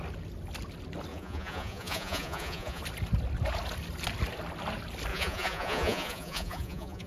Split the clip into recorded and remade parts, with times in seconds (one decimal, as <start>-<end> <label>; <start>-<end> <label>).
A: 0.0-1.1 recorded; 1.1-2.8 remade; 2.8-5.1 recorded; 5.1-7.1 remade